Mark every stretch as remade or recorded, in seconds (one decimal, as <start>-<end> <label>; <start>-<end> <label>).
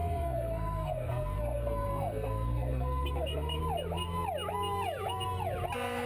0.0-3.6 remade; 3.6-6.1 recorded